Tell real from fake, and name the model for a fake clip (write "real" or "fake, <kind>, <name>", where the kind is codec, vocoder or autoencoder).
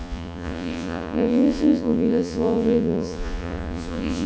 fake, vocoder, Vocos